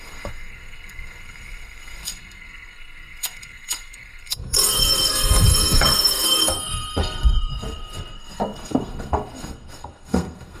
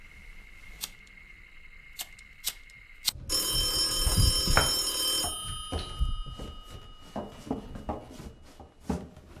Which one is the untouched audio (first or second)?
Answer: second